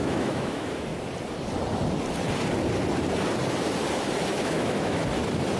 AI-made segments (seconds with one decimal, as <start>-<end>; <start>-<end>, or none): 0.0-0.9; 4.3-5.0